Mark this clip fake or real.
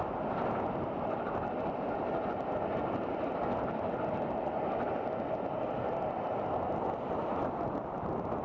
real